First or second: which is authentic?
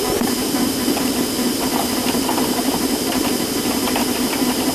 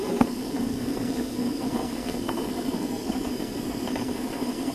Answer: first